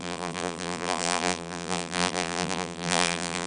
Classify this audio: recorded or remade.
remade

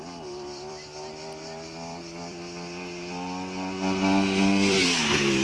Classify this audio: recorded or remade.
remade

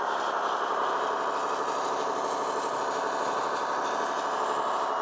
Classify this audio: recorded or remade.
recorded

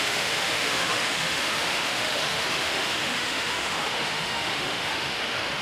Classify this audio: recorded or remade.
remade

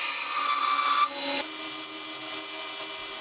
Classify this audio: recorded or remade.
recorded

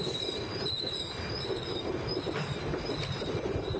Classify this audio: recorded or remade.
recorded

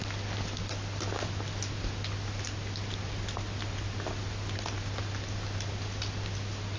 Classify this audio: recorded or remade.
recorded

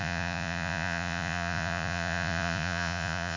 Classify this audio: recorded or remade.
remade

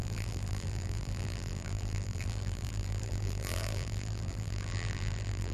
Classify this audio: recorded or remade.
remade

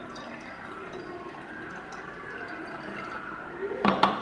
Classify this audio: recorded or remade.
recorded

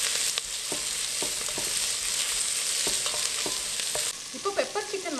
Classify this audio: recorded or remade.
recorded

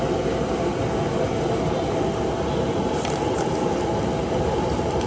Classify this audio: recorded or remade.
recorded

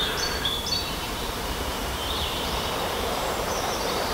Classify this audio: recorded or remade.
remade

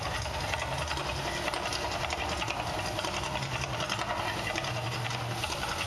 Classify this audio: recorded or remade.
recorded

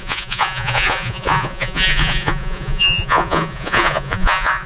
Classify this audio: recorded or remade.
remade